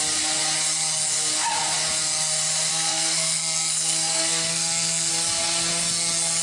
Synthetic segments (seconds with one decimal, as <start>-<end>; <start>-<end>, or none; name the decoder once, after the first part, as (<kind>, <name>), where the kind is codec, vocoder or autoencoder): 2.7-5.1 (codec, SNAC)